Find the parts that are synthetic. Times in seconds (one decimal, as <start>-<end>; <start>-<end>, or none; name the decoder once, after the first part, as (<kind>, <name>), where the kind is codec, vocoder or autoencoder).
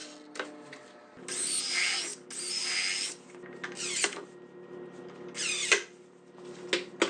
none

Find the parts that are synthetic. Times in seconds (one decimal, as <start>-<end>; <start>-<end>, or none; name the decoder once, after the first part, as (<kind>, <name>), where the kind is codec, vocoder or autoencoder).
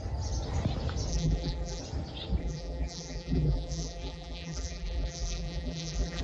1.1-1.8 (vocoder, BigVGAN v2); 2.4-6.2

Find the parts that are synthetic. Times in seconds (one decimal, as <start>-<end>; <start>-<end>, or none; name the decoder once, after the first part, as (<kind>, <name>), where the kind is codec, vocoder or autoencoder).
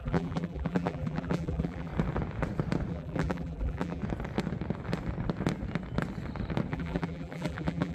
0.0-1.9 (vocoder, BigVGAN v2); 2.9-4.0; 6.7-7.9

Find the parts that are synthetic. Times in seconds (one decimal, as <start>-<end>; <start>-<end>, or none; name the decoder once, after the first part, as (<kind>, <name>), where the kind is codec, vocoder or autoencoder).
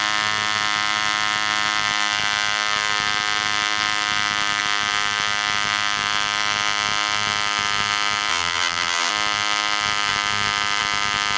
8.3-9.1 (vocoder, BigVGAN v2)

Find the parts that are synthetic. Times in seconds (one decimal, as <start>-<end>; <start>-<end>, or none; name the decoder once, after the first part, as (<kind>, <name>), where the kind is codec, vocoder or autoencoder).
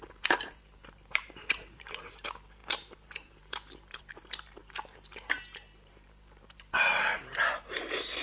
0.0-8.2 (vocoder, BigVGAN v2)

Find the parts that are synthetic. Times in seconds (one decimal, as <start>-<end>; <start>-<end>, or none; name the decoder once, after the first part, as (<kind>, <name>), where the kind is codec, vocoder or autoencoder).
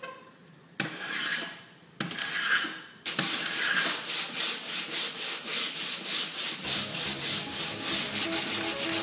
1.3-4.9 (vocoder, BigVGAN v2); 5.5-8.4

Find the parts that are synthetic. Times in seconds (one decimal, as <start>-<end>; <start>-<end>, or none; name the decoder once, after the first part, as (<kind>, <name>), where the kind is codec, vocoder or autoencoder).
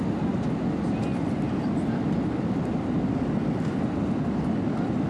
1.1-4.2 (vocoder, BigVGAN v2)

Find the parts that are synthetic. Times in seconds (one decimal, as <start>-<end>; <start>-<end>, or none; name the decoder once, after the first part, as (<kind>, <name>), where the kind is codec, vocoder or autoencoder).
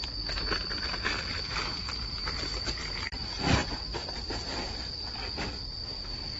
1.3-1.8 (vocoder, BigVGAN v2)